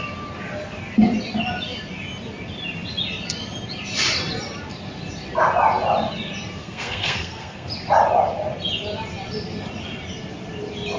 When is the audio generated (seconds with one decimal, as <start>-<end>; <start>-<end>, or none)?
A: 6.6-7.7